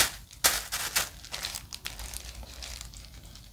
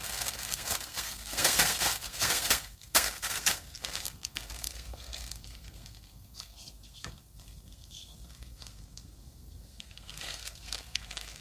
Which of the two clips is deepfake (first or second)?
second